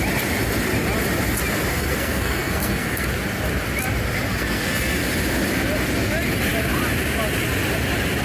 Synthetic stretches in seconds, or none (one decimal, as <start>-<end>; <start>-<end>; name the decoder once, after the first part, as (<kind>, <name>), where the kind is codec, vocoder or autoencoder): 1.7-3.1 (codec, SNAC); 4.3-5.0